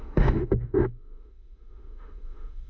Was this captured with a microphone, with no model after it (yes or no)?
no